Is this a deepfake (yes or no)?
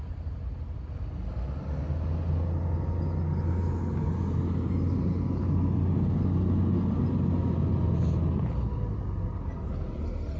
no